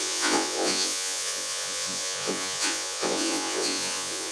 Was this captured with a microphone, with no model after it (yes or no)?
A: no